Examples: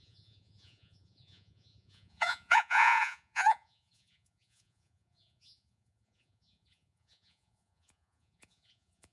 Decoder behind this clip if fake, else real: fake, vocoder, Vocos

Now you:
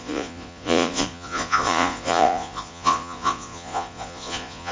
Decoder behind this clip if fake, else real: fake, vocoder, Vocos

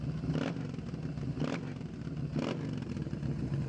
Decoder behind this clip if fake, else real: real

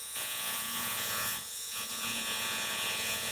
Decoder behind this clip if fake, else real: fake, vocoder, Vocos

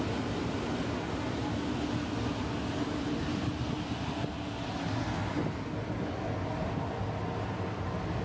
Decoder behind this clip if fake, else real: real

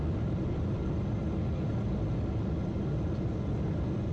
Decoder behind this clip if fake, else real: real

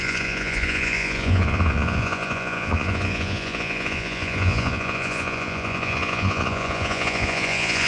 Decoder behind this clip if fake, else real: fake, vocoder, Vocos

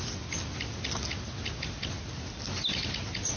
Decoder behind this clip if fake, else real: real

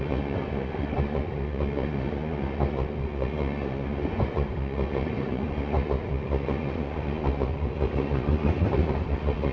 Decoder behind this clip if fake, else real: fake, vocoder, Vocos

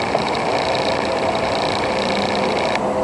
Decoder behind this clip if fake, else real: real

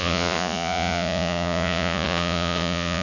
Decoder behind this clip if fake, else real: fake, vocoder, Vocos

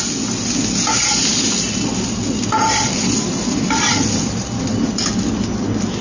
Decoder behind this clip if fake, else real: real